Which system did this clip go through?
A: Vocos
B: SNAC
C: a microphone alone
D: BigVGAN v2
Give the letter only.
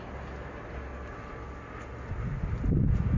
C